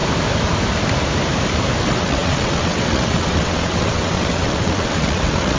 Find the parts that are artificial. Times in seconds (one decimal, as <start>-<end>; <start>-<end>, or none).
1.8-5.6